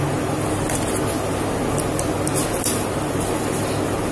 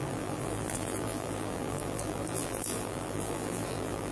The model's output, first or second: second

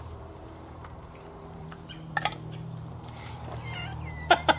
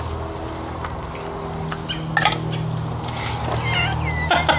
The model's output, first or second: first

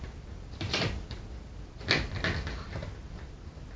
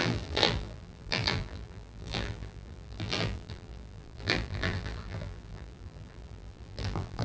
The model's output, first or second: second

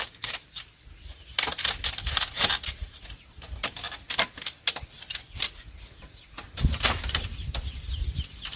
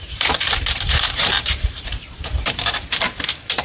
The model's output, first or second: second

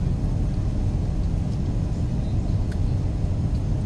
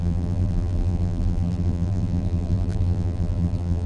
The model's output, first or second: second